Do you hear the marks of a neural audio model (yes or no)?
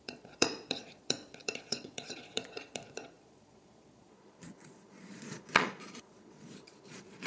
yes